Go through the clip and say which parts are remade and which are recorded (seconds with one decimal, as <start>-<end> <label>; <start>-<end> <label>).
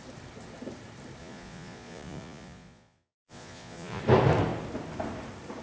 0.0-1.2 recorded; 1.2-4.0 remade; 4.0-5.6 recorded